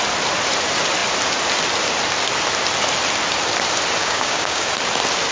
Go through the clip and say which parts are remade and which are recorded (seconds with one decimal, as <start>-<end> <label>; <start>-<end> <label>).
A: 0.0-4.0 recorded; 4.0-4.7 remade; 4.7-5.3 recorded